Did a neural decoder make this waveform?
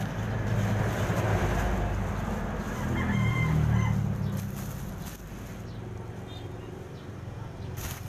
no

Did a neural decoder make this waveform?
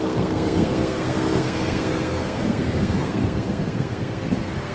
yes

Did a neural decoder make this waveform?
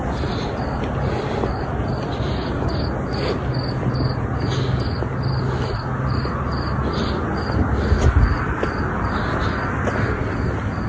no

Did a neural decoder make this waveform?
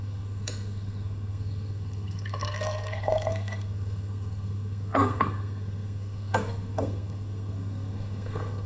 yes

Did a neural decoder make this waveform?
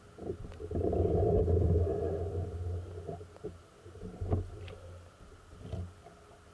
no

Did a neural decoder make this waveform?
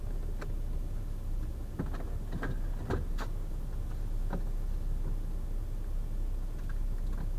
no